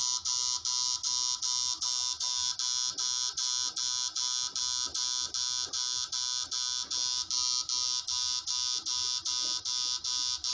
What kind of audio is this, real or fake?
real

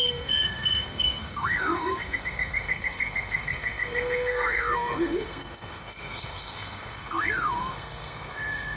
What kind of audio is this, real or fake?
fake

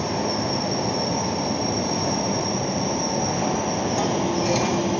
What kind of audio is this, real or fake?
real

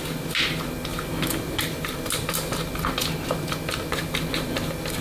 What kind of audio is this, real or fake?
real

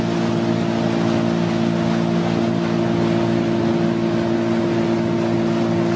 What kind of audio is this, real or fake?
real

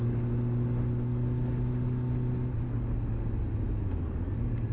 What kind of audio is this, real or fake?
real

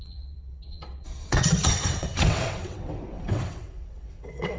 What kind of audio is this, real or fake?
fake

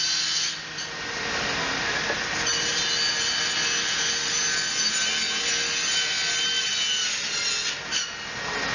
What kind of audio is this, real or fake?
real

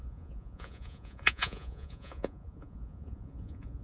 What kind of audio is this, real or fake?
fake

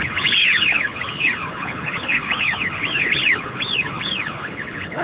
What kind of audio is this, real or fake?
fake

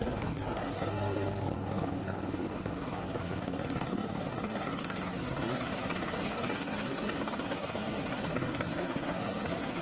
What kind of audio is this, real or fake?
fake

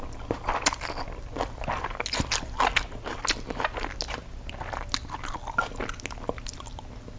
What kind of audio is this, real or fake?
real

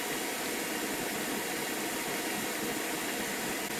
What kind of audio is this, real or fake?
real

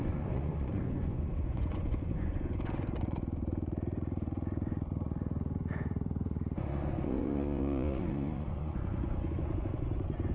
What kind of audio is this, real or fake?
fake